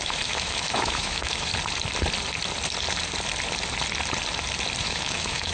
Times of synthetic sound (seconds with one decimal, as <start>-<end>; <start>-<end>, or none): 0.0-1.5; 4.8-5.5